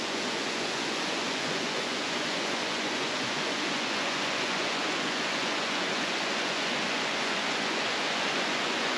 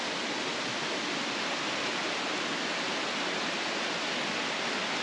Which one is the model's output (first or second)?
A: first